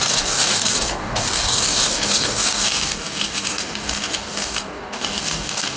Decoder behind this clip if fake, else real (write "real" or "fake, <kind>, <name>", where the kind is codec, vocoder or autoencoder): fake, codec, DAC